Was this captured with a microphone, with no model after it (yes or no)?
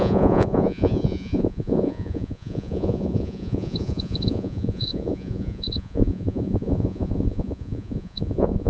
no